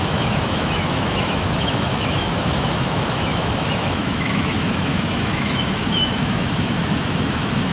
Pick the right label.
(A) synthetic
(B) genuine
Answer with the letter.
A